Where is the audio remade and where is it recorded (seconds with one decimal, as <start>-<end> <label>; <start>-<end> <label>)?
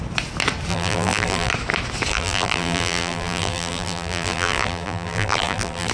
0.0-0.7 recorded; 0.7-1.5 remade; 1.5-2.1 recorded; 2.1-5.9 remade